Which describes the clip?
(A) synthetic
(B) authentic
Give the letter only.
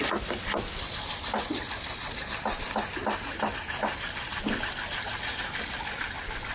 B